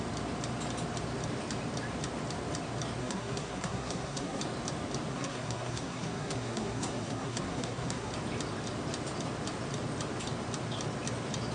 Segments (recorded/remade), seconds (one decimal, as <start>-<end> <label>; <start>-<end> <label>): 0.0-3.0 recorded; 3.0-4.4 remade; 4.4-5.1 recorded; 5.1-8.1 remade; 8.1-11.5 recorded